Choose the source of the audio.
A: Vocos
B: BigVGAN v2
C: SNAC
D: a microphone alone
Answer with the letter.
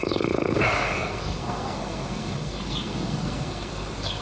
C